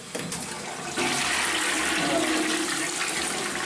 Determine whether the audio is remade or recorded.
recorded